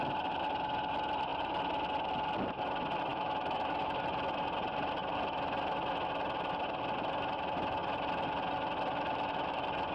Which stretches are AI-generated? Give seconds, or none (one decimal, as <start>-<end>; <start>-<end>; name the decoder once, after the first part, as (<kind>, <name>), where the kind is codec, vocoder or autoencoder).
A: 3.1-4.0 (autoencoder, DAC-VAE)